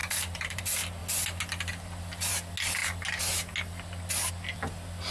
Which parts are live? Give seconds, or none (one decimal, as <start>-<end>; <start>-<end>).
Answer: 0.6-5.1